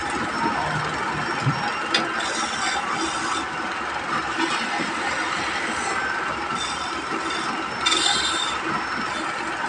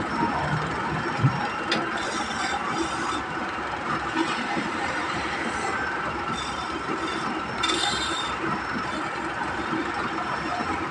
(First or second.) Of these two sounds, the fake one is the second